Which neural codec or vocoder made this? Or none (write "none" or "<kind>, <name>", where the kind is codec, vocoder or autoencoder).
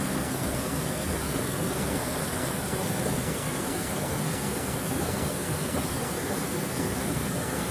codec, SNAC